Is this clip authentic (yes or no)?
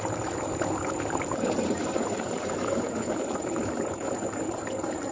no